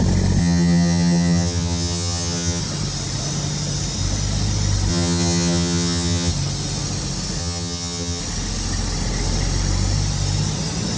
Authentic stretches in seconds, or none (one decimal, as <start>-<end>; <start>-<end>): 0.0-0.4; 2.6-4.9; 6.3-7.4; 8.2-11.0